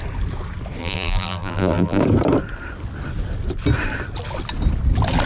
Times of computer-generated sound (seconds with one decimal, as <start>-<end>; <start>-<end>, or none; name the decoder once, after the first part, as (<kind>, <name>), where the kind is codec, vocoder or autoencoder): 0.8-2.0 (vocoder, BigVGAN v2)